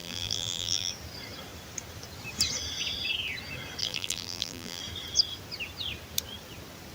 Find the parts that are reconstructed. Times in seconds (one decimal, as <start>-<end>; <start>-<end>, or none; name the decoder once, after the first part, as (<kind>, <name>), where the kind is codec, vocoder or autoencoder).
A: 0.0-0.9 (vocoder, BigVGAN v2); 3.8-4.8